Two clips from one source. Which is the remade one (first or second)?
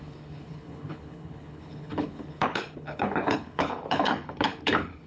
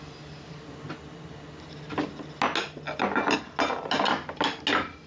first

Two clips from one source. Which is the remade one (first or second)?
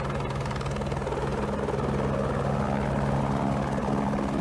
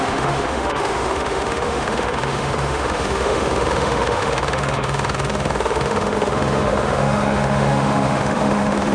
second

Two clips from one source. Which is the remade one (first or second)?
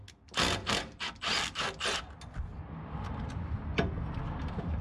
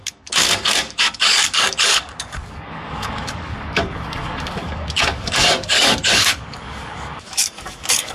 second